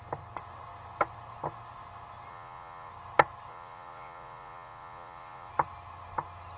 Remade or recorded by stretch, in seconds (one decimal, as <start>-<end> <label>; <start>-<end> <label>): 0.0-2.3 recorded; 2.3-2.9 remade; 2.9-3.5 recorded; 3.5-5.5 remade; 5.5-6.6 recorded